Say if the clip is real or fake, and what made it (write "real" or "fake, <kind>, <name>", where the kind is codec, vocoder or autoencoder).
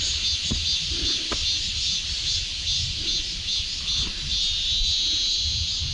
real